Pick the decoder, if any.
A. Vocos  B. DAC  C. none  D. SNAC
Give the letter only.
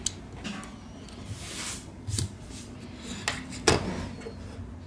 C